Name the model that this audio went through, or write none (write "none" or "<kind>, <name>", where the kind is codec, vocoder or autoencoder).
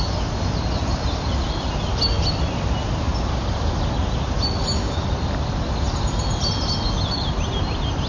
none